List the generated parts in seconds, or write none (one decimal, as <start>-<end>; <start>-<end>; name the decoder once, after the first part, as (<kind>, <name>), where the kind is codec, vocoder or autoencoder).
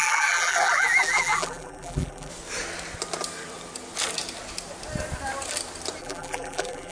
0.0-2.3 (vocoder, BigVGAN v2); 6.0-6.9